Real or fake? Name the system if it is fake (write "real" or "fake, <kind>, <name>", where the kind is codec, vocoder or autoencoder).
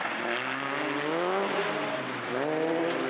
real